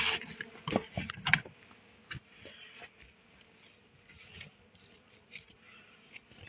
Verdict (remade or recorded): recorded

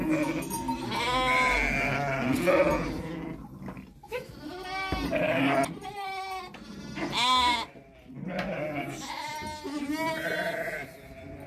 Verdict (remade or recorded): recorded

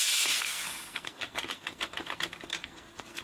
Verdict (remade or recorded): remade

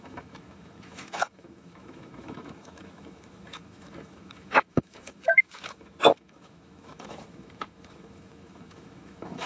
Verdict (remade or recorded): remade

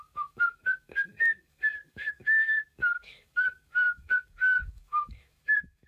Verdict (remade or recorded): remade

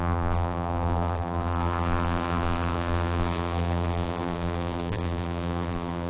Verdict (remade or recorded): remade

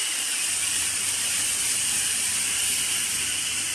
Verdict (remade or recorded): remade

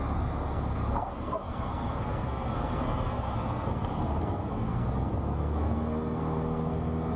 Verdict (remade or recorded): remade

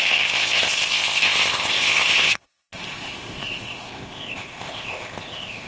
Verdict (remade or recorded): remade